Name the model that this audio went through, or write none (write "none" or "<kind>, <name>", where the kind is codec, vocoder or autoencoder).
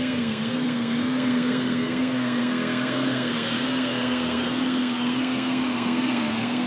codec, SNAC